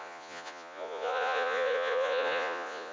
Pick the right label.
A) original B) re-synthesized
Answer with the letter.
B